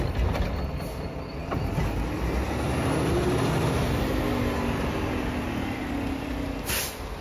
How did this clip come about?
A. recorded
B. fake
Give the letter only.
A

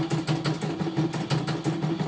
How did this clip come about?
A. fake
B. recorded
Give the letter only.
B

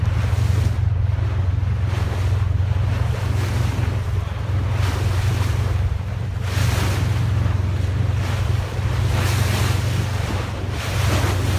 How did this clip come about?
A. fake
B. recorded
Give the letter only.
B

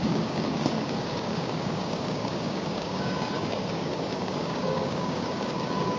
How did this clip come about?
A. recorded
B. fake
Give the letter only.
B